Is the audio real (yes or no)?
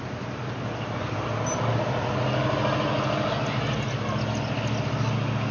yes